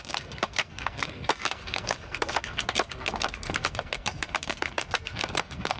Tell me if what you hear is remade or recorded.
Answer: remade